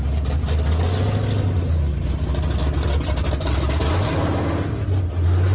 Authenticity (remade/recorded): recorded